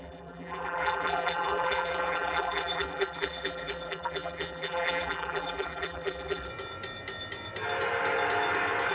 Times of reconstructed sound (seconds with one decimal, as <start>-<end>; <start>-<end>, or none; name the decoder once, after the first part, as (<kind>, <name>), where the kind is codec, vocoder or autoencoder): 0.0-6.5 (vocoder, BigVGAN v2)